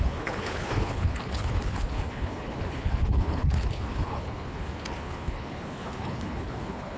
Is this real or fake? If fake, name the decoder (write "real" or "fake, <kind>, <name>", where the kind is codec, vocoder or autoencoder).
fake, codec, HILCodec